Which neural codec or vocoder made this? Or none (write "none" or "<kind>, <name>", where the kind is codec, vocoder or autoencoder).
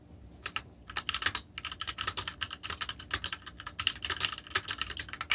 none